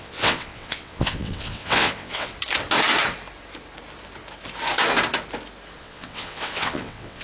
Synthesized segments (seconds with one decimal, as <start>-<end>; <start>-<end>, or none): 0.0-2.3; 5.8-7.2